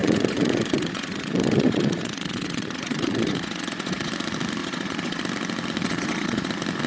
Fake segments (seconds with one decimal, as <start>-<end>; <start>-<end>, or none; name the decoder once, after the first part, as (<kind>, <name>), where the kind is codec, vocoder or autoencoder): 0.0-4.1 (vocoder, Vocos); 4.6-5.2; 5.8-6.5